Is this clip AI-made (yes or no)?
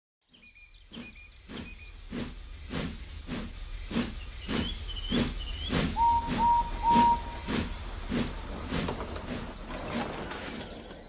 no